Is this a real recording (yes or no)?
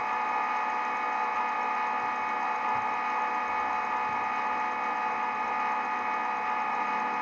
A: yes